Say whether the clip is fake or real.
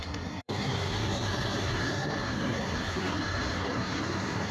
fake